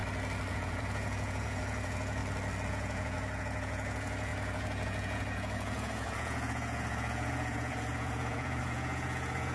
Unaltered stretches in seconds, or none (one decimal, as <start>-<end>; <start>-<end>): 0.0-0.5; 2.2-2.7